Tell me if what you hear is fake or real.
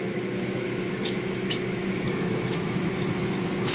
fake